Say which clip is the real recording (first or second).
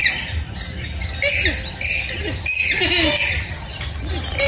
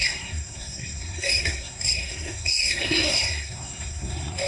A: first